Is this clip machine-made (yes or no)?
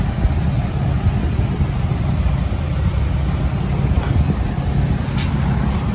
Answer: no